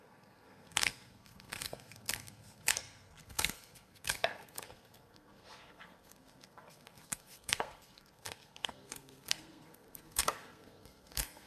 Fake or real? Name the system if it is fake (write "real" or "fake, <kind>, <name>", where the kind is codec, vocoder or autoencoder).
fake, codec, SNAC